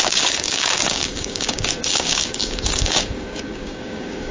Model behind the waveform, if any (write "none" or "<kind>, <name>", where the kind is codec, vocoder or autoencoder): codec, DAC